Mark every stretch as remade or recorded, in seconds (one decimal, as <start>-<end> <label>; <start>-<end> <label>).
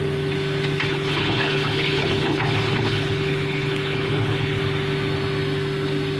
0.0-0.9 recorded; 0.9-4.6 remade; 4.6-6.2 recorded